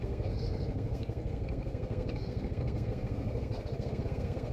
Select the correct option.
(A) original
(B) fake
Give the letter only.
B